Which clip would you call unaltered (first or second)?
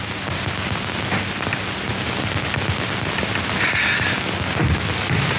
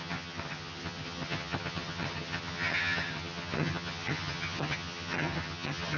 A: first